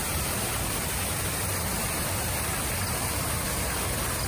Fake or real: fake